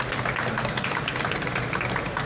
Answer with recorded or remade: recorded